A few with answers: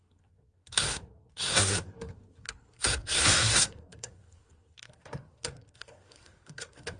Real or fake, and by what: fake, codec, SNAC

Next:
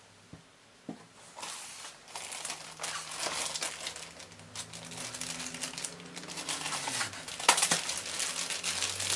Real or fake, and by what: real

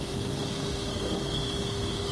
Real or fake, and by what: fake, codec, SNAC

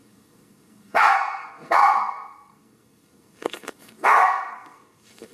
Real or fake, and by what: fake, codec, SNAC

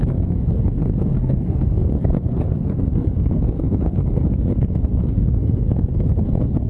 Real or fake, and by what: fake, codec, SNAC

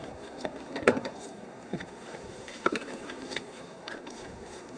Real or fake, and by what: fake, codec, SNAC